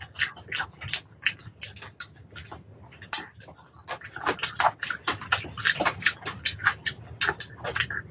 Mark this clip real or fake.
real